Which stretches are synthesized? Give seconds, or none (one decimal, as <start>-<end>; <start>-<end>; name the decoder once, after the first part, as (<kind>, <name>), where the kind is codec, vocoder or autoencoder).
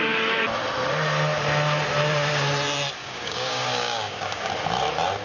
3.0-4.5 (codec, DAC)